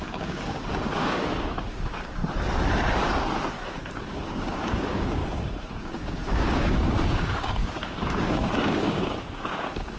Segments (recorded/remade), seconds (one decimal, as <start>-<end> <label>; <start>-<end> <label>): 0.0-2.2 remade; 2.2-4.0 recorded; 4.0-5.2 remade; 5.2-5.8 recorded; 5.8-10.0 remade